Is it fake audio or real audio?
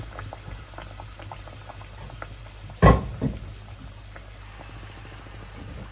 real